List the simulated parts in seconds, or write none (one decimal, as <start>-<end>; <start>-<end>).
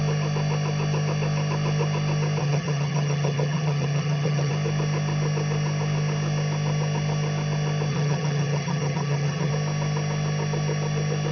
2.4-4.5; 7.9-9.5